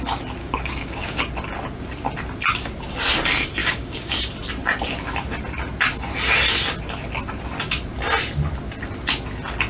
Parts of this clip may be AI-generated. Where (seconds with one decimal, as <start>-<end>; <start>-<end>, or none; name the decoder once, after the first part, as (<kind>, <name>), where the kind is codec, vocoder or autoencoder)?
0.4-1.3 (codec, DAC); 3.6-4.1